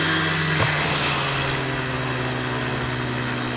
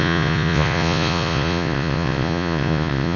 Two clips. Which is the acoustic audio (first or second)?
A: first